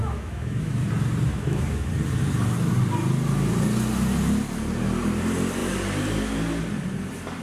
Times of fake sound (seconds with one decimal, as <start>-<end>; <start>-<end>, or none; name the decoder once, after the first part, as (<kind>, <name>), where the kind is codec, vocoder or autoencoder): 0.0-0.7 (autoencoder, DAC-VAE); 1.3-1.9